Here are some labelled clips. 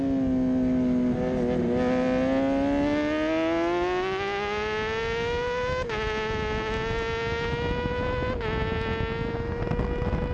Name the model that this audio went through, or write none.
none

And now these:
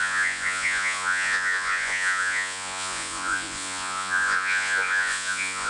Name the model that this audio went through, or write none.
vocoder, Vocos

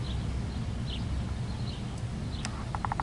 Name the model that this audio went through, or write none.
none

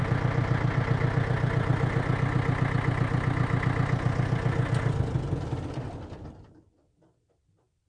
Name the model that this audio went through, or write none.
none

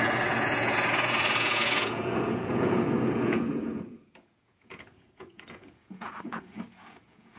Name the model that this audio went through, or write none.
vocoder, Vocos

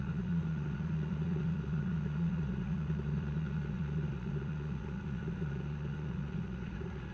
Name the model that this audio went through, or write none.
vocoder, Vocos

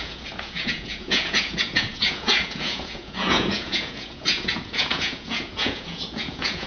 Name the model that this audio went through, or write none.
vocoder, Vocos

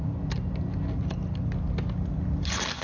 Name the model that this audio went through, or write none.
none